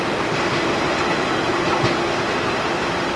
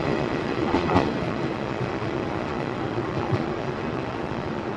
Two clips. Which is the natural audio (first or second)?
first